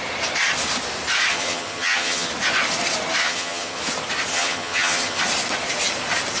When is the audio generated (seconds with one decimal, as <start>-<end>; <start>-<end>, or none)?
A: 1.3-2.3; 3.2-3.8; 4.3-5.2